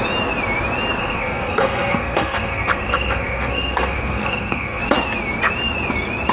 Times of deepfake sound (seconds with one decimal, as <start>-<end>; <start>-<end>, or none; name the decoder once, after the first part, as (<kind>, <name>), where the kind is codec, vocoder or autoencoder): 1.0-4.8 (codec, SNAC)